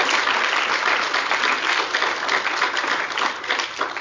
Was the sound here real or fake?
real